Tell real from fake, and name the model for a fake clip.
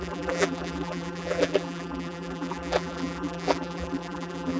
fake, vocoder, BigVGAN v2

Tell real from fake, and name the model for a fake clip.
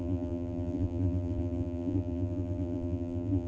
fake, vocoder, BigVGAN v2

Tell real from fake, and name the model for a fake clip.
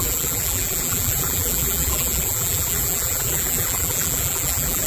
fake, vocoder, BigVGAN v2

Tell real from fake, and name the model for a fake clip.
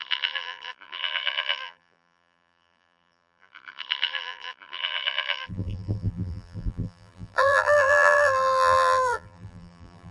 fake, vocoder, BigVGAN v2